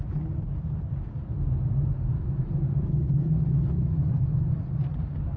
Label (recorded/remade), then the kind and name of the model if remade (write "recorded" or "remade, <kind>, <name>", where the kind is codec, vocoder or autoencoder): remade, vocoder, BigVGAN v2